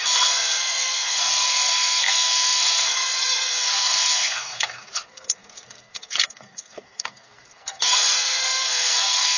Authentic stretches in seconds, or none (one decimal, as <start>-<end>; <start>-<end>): none